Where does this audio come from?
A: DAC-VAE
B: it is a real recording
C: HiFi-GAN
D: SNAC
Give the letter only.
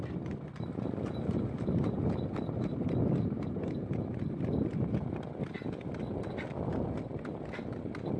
B